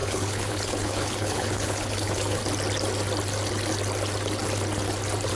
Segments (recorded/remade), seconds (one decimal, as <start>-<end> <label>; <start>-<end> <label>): 0.0-2.4 remade; 2.4-5.3 recorded